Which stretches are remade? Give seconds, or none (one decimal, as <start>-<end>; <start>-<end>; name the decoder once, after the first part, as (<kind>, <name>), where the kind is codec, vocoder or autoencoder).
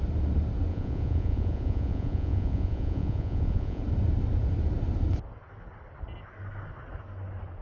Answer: 0.7-3.8 (vocoder, Vocos)